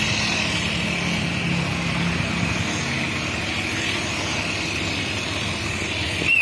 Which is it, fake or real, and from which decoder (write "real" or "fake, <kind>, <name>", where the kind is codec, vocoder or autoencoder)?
real